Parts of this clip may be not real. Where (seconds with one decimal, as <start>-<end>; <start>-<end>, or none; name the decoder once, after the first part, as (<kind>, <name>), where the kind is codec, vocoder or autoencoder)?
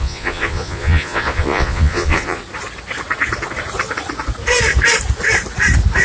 0.0-2.4 (vocoder, Vocos)